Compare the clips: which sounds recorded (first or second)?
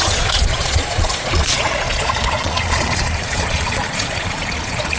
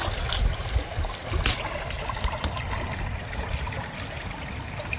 second